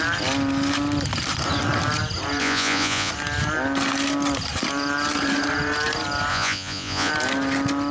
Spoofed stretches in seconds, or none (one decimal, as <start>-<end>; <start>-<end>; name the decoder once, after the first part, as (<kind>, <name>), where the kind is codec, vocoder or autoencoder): 2.4-3.1 (vocoder, Vocos); 6.3-7.1